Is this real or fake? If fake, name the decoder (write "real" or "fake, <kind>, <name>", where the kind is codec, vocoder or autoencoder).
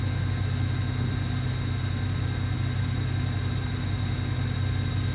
real